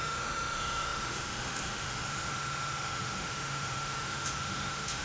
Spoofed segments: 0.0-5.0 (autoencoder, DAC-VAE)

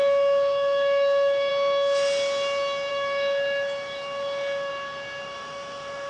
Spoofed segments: 0.0-1.5 (autoencoder, DAC-VAE); 2.9-4.7; 5.2-6.1

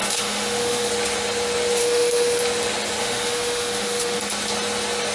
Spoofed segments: 0.0-0.9 (autoencoder, DAC-VAE); 1.8-2.4; 3.0-4.2

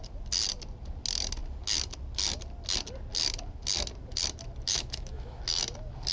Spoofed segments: 4.7-5.4 (autoencoder, DAC-VAE)

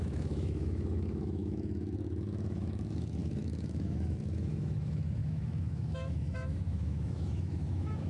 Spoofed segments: 0.0-8.1 (autoencoder, DAC-VAE)